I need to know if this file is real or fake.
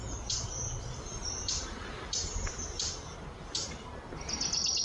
real